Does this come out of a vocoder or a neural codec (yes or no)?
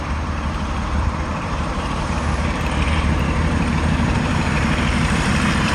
yes